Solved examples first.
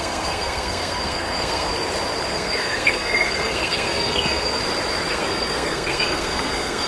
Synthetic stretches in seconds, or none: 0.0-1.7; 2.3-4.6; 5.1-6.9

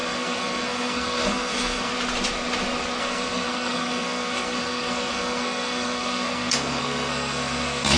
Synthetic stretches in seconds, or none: 0.0-1.9; 3.0-8.0

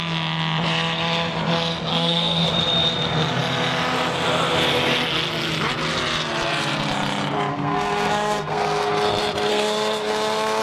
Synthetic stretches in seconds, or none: 1.9-2.5; 7.5-8.9; 9.5-10.6

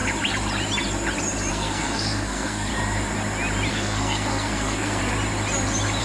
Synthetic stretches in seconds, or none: 1.5-2.7; 3.7-5.0

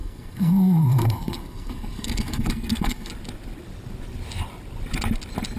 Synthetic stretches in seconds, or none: 0.0-3.1

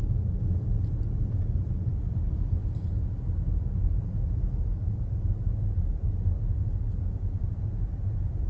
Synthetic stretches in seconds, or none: none